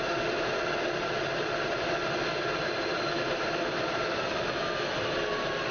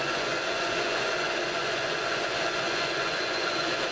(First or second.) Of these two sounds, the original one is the first